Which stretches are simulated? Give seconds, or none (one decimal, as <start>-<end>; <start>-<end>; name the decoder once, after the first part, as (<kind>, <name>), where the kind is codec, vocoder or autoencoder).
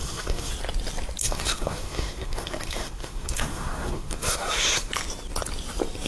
0.0-0.5 (codec, SNAC); 1.2-4.9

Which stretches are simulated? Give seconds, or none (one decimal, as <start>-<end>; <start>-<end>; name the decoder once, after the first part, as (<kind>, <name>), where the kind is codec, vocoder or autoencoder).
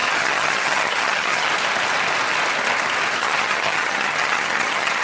0.0-1.5 (vocoder, HiFi-GAN); 3.2-5.0